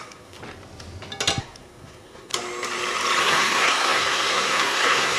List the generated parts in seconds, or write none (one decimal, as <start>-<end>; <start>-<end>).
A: 0.0-0.4; 1.4-2.3; 3.2-5.2